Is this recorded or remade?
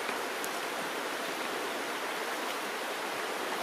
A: remade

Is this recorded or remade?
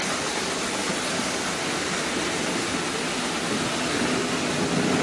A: recorded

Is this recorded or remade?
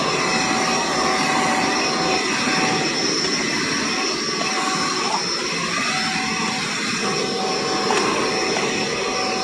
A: recorded